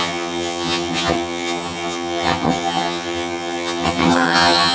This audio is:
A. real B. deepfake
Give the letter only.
B